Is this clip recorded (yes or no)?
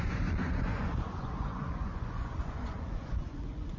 no